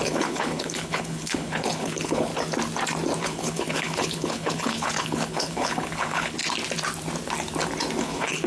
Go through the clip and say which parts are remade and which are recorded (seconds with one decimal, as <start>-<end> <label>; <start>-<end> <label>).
0.0-2.3 remade; 2.3-3.2 recorded; 3.2-6.4 remade; 6.4-8.0 recorded; 8.0-8.5 remade